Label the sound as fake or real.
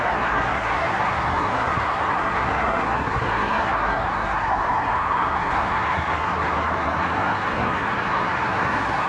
fake